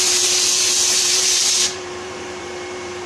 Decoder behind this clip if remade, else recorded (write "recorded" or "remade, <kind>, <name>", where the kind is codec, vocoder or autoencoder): remade, vocoder, BigVGAN v2